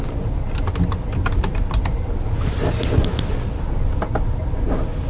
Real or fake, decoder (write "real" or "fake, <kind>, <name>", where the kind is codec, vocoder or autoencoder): real